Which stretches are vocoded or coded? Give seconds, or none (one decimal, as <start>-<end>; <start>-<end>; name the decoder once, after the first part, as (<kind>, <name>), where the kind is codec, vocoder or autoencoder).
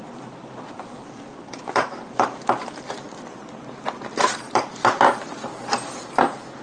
1.3-2.9 (vocoder, BigVGAN v2); 4.1-4.9